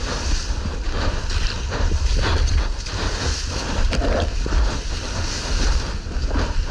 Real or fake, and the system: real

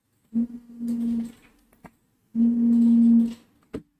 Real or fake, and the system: real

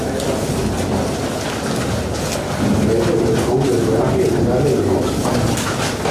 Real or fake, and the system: real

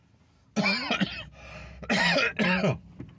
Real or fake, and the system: real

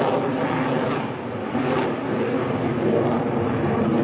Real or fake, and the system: real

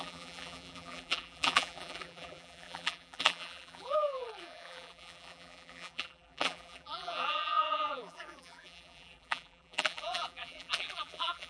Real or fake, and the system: fake, vocoder, BigVGAN v2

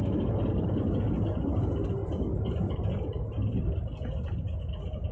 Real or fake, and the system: real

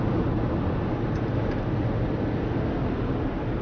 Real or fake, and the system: real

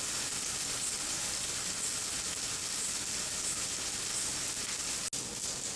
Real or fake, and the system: real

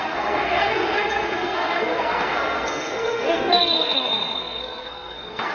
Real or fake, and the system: fake, codec, SNAC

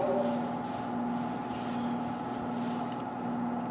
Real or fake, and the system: real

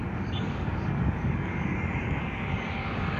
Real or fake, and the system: fake, codec, DAC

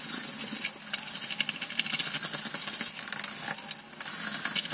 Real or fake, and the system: real